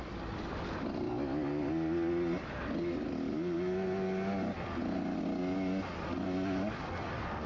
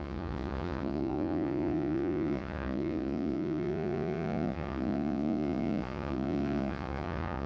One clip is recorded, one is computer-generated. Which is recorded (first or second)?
first